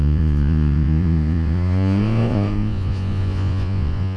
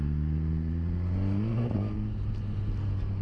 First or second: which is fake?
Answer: first